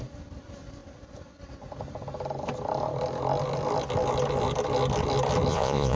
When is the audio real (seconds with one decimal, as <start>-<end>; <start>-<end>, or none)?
0.0-5.5